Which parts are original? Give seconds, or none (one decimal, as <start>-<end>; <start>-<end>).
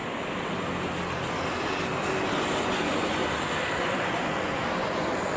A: 0.0-2.6; 3.2-3.8